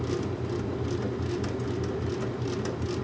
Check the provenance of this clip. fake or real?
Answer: real